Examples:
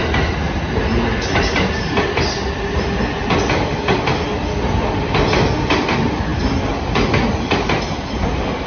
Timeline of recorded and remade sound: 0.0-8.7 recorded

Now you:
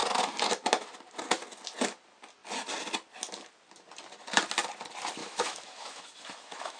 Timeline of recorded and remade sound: 0.0-5.2 recorded; 5.2-6.8 remade

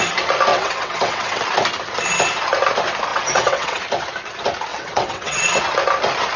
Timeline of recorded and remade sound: 0.0-0.5 recorded; 0.5-1.4 remade; 1.4-3.1 recorded; 3.1-3.8 remade; 3.8-4.7 recorded; 4.7-5.6 remade; 5.6-6.4 recorded

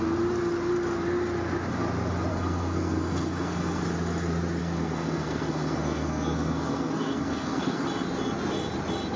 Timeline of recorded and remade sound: 0.0-2.3 recorded; 2.3-3.8 remade; 3.8-4.6 recorded; 4.6-7.8 remade; 7.8-9.2 recorded

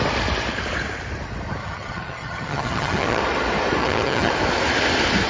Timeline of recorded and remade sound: 0.0-1.6 recorded; 1.6-3.2 remade; 3.2-3.8 recorded; 3.8-4.3 remade; 4.3-5.3 recorded

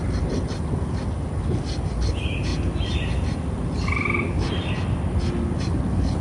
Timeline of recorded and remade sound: 0.0-6.2 recorded

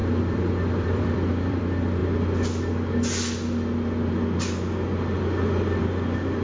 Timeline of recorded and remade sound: 0.0-1.6 remade; 1.6-6.4 recorded

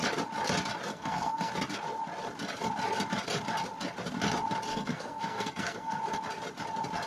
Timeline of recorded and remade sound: 0.0-0.9 recorded; 0.9-1.5 remade; 1.5-4.7 recorded; 4.7-6.0 remade; 6.0-7.1 recorded